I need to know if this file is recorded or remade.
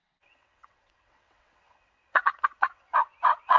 remade